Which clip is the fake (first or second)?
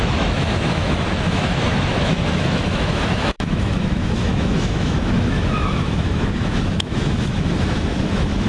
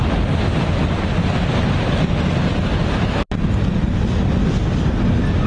first